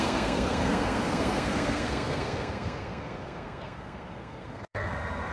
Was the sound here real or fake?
fake